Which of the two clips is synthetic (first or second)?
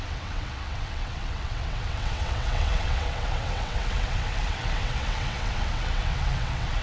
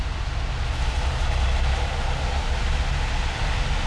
first